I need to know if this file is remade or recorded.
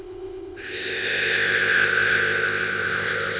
remade